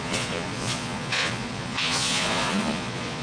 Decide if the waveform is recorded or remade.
remade